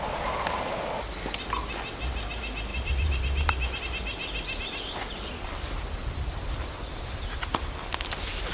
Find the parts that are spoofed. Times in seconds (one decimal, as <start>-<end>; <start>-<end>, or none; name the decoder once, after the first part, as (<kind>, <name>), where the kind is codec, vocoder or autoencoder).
none